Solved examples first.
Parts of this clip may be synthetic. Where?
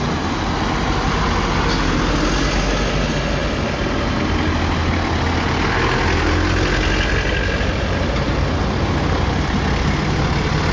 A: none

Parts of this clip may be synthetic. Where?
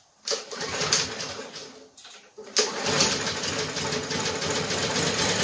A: none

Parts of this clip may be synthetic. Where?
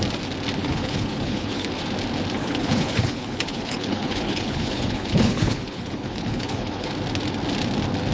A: 0.6-1.7 (codec, HILCodec); 2.4-6.9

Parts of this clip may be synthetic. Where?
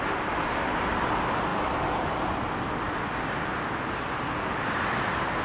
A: none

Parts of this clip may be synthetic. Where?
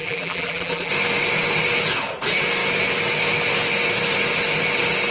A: 0.0-0.9 (vocoder, BigVGAN v2)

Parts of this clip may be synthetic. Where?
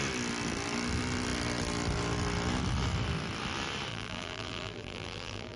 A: 3.9-5.6 (vocoder, BigVGAN v2)